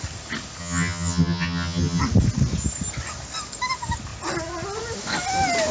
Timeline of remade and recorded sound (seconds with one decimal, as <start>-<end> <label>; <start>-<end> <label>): 0.0-0.6 recorded; 0.6-2.0 remade; 2.0-5.7 recorded